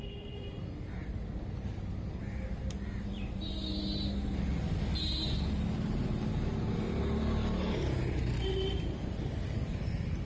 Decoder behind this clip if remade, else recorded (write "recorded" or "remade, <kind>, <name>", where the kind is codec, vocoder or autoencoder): recorded